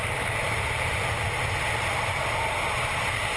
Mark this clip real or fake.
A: real